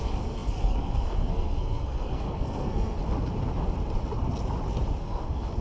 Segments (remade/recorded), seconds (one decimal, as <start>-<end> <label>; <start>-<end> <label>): 0.0-3.0 remade; 3.0-5.0 recorded; 5.0-5.6 remade

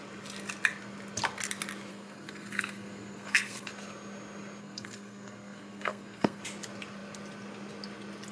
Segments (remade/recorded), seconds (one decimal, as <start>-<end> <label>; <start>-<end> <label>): 0.0-1.9 recorded; 1.9-3.7 remade; 3.7-4.6 recorded; 4.6-6.4 remade; 6.4-8.3 recorded

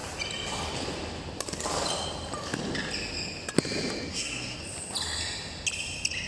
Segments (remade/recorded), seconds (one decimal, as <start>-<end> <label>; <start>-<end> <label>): 0.0-4.1 recorded; 4.1-4.6 remade; 4.6-6.3 recorded

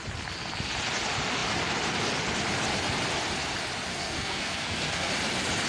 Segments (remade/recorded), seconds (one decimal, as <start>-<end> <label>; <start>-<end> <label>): 0.0-3.9 recorded; 3.9-5.1 remade; 5.1-5.7 recorded

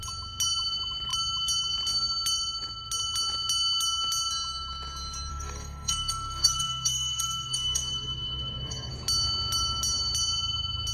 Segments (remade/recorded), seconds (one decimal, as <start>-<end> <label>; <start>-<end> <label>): 0.0-5.3 recorded; 5.3-8.9 remade; 8.9-10.9 recorded

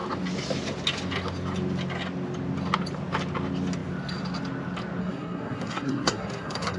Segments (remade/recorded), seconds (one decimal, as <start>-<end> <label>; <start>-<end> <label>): 0.0-5.0 recorded; 5.0-6.8 remade